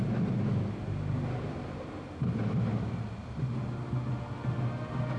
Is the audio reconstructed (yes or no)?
no